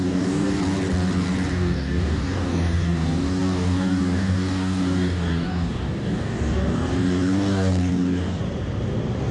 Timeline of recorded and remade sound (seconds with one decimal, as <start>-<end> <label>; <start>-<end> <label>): 0.0-0.5 remade; 0.5-1.5 recorded; 1.5-8.4 remade; 8.4-9.3 recorded